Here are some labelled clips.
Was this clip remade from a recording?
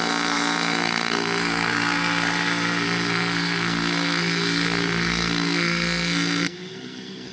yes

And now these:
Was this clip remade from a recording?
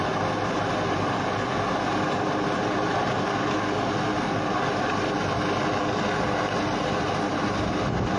no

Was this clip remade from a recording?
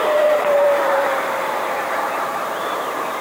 yes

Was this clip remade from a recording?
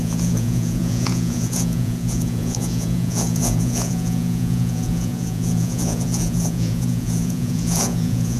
yes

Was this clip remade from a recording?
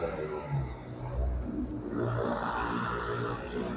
no